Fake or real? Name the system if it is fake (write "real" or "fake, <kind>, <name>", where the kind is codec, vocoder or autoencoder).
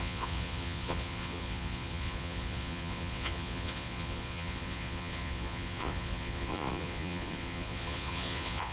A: fake, vocoder, Vocos